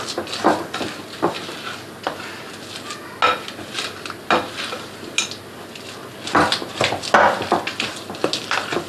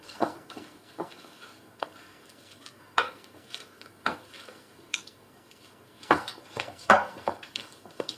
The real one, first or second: first